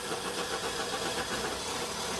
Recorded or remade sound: remade